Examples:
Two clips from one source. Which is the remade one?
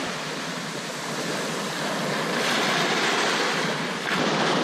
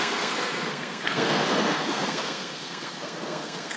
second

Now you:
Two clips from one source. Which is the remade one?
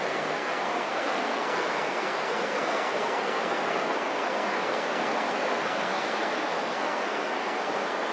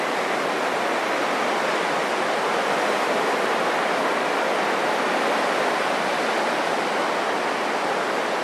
first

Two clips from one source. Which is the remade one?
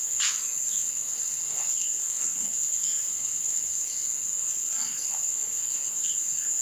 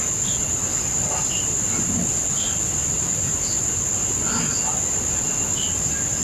first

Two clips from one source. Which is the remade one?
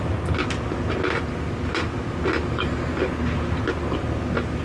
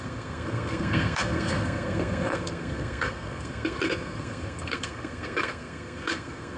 second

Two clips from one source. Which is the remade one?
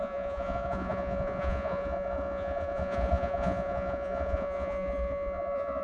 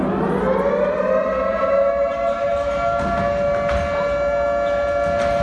first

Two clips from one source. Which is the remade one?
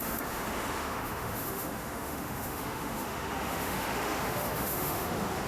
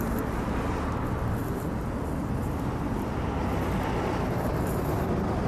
first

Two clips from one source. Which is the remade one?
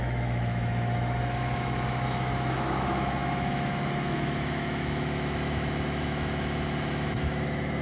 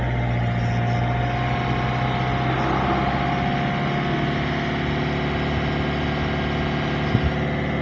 first